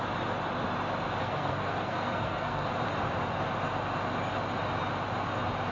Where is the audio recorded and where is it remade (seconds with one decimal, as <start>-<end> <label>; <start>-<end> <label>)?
0.0-1.2 recorded; 1.2-2.7 remade; 2.7-5.7 recorded